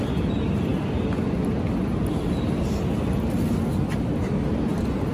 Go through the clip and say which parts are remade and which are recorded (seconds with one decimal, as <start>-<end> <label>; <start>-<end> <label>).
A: 0.0-4.2 recorded; 4.2-5.1 remade